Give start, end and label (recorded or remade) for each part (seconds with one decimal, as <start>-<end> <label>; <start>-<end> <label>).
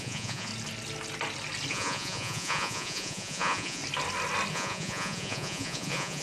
0.0-0.5 remade; 0.5-1.7 recorded; 1.7-3.8 remade; 3.8-4.5 recorded; 4.5-6.2 remade